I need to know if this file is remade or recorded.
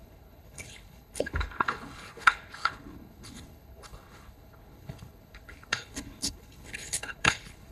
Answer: remade